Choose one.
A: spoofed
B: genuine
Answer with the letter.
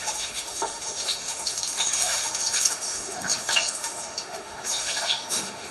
A